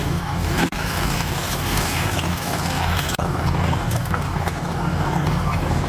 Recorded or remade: remade